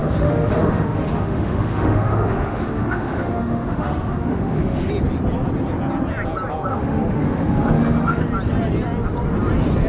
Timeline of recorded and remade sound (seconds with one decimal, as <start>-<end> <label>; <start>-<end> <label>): 0.0-4.9 remade; 4.9-6.7 recorded; 6.7-8.2 remade; 8.2-9.9 recorded